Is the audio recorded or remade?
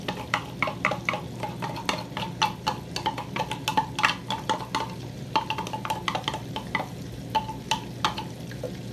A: recorded